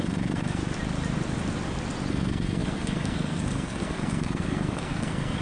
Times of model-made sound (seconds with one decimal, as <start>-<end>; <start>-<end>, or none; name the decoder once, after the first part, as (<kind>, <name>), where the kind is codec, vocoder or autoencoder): 0.0-0.6 (codec, SNAC); 2.1-5.4